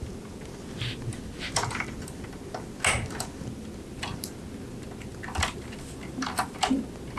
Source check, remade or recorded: recorded